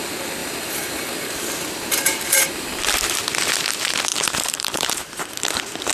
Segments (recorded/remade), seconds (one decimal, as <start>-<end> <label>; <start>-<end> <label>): 0.0-0.4 recorded; 0.4-3.2 remade; 3.2-4.1 recorded; 4.1-5.2 remade; 5.2-5.9 recorded

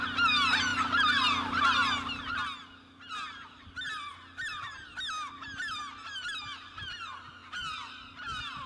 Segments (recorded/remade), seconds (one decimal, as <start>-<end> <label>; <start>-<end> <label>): 0.0-7.4 recorded; 7.4-8.7 remade